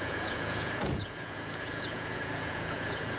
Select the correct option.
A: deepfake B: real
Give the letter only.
A